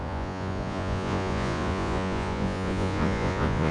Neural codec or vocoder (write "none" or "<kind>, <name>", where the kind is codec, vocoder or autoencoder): vocoder, Vocos